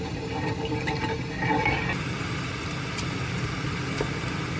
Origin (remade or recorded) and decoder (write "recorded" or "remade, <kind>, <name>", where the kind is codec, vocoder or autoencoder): recorded